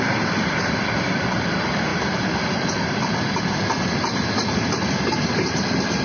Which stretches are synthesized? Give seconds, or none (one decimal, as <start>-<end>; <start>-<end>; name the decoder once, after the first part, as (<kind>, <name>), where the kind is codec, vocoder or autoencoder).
0.0-6.0 (vocoder, BigVGAN v2)